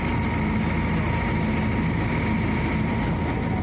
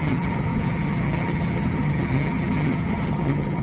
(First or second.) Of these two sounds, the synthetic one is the second